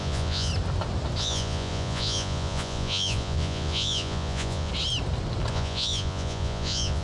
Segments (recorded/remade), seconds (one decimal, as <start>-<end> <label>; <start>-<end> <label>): 0.0-0.5 remade; 0.5-1.2 recorded; 1.2-4.7 remade; 4.7-5.5 recorded; 5.5-7.0 remade